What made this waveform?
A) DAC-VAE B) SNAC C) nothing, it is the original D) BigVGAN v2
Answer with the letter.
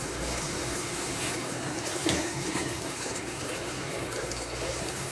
B